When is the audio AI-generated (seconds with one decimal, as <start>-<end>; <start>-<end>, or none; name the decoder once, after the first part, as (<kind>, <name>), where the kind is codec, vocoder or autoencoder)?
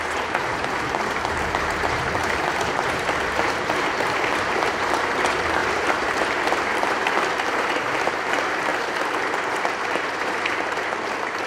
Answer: 0.0-11.5 (vocoder, BigVGAN v2)